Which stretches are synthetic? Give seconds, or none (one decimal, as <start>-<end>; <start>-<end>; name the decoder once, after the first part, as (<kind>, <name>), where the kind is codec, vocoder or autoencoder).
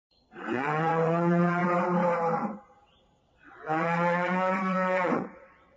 0.0-1.6 (vocoder, WaveNeXt); 3.2-5.8